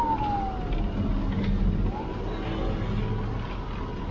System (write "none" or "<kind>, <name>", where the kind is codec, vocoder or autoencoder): none